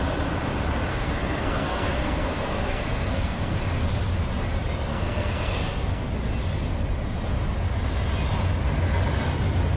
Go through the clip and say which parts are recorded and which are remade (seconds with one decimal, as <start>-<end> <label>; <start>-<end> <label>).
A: 0.0-0.9 recorded; 0.9-3.6 remade; 3.6-4.9 recorded; 4.9-6.1 remade; 6.1-9.8 recorded